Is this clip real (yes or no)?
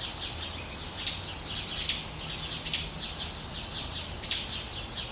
yes